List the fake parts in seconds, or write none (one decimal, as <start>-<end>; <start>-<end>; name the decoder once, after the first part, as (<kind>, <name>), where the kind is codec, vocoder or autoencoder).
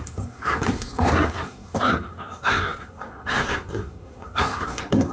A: 0.0-5.1 (codec, SNAC)